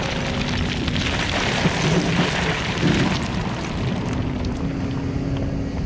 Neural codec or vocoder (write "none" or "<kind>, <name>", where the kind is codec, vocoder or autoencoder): none